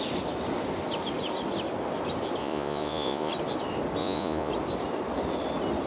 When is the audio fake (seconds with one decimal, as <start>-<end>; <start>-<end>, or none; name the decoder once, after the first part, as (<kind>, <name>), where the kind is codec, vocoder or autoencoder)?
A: 2.4-3.3 (vocoder, Vocos); 4.0-4.5